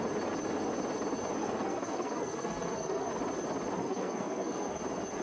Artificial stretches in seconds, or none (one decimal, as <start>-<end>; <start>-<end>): 1.4-3.1; 3.8-4.8